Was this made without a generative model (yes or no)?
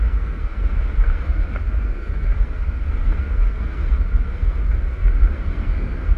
no